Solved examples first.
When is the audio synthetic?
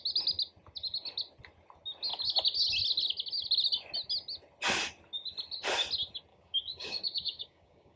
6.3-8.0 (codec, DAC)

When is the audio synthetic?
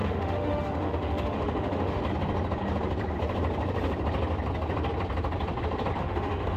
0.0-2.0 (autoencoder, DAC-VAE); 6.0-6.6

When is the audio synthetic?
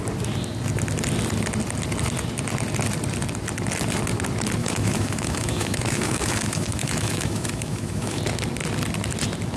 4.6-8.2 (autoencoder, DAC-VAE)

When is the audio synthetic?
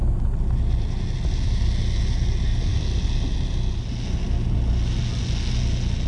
none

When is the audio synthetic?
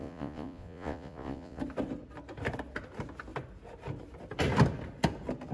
0.0-1.6 (vocoder, Vocos)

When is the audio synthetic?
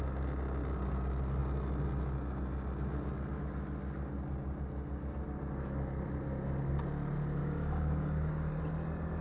7.4-8.6 (codec, DAC)